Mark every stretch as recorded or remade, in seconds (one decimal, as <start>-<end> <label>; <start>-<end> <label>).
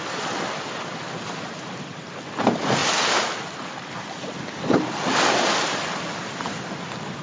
0.0-2.8 remade; 2.8-4.7 recorded; 4.7-7.2 remade